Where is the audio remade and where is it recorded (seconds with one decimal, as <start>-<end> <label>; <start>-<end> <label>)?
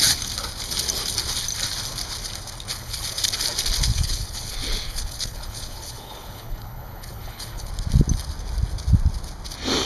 0.0-2.7 recorded; 2.7-3.2 remade; 3.2-3.9 recorded; 3.9-7.7 remade; 7.7-9.9 recorded